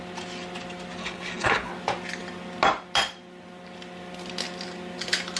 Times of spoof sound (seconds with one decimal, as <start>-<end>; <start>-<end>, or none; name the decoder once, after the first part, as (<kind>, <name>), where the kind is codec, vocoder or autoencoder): 1.0-1.7 (codec, HILCodec)

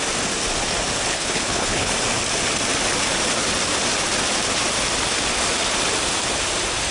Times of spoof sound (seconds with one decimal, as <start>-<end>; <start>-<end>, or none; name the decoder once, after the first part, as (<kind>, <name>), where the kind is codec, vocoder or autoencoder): 1.1-1.9 (codec, HILCodec)

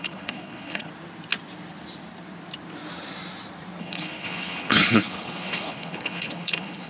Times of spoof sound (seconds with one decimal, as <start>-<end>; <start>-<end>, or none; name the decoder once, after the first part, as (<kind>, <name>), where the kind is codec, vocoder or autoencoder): 0.0-0.9 (codec, HILCodec); 3.8-6.9

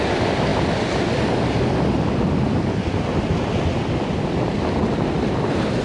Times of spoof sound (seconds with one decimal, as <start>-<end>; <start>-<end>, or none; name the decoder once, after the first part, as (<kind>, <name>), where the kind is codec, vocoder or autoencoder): none